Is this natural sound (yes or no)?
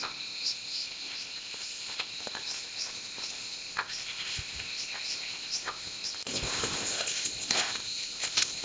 no